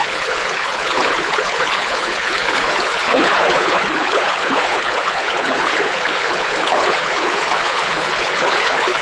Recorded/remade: remade